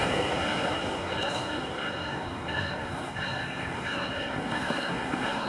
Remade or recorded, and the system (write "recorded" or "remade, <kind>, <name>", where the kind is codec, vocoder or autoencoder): remade, codec, SNAC